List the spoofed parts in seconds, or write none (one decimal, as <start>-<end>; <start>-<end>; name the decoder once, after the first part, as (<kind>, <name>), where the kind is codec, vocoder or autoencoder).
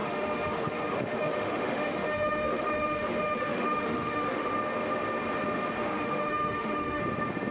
0.0-4.5 (autoencoder, DAC-VAE); 5.8-7.0